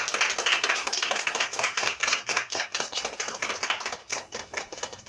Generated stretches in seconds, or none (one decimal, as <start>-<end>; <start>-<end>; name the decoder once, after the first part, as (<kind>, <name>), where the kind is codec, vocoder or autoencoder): 0.4-3.5 (codec, SNAC); 4.0-5.1